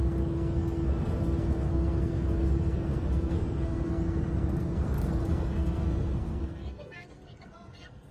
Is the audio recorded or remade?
remade